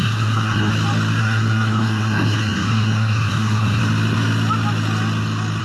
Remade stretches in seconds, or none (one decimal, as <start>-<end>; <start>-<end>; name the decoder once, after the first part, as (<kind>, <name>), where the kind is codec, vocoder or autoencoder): 0.0-0.7 (codec, SNAC); 1.2-3.8